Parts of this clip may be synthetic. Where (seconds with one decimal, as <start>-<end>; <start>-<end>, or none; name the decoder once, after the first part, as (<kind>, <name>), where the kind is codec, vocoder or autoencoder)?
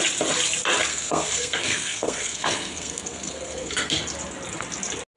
0.9-4.0 (codec, SNAC)